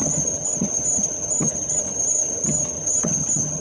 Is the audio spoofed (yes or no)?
yes